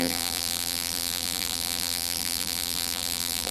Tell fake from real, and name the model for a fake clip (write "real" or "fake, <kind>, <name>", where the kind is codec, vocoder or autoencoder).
fake, vocoder, BigVGAN v2